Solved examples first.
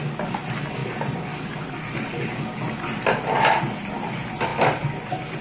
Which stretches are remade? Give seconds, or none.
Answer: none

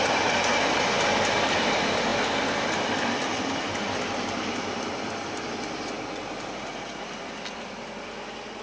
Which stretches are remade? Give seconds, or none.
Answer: none

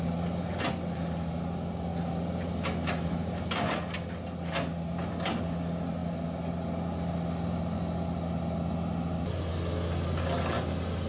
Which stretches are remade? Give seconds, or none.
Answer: none

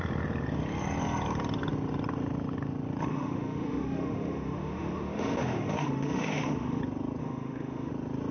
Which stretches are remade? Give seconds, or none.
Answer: 3.1-6.8 (autoencoder, DAC-VAE); 7.2-7.9

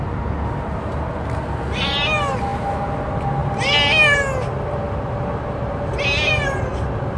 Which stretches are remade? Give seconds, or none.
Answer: none

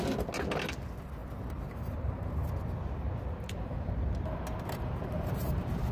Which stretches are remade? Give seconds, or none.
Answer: none

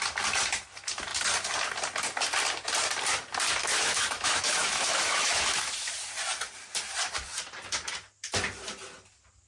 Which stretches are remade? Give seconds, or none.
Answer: 3.6-5.9 (autoencoder, DAC-VAE)

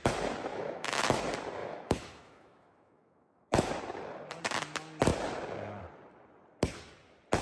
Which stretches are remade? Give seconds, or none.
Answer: 0.5-1.2 (autoencoder, DAC-VAE); 1.6-3.7